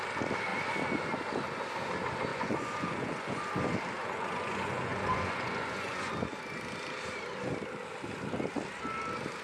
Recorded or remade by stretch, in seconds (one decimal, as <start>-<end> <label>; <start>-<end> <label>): 0.0-2.3 recorded; 2.3-3.5 remade; 3.5-4.0 recorded; 4.0-6.1 remade; 6.1-9.4 recorded